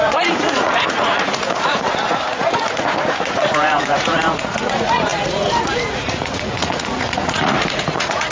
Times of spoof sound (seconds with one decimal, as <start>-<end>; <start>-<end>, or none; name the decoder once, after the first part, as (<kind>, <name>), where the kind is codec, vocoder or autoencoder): 0.0-8.3 (vocoder, Vocos)